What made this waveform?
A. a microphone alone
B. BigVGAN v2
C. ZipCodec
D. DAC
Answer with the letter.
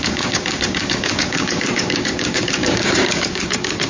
D